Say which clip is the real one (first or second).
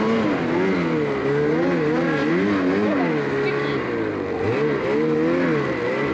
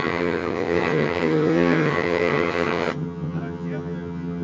first